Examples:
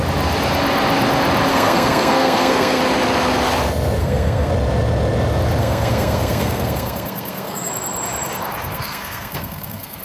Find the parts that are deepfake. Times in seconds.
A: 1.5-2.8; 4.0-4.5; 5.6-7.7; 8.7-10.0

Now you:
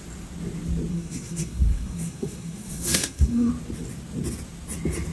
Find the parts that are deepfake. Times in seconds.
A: 0.9-3.5

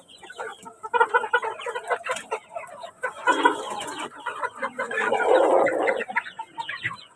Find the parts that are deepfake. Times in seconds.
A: 0.0-0.5; 2.7-7.2

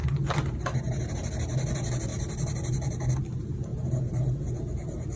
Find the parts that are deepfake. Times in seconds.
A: none

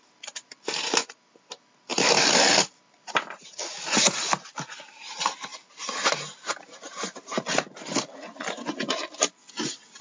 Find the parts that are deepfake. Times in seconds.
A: 5.5-6.1

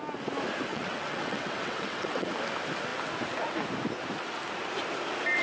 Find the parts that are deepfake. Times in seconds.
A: 0.7-2.3

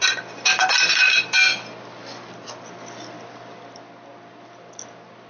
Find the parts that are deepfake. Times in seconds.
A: none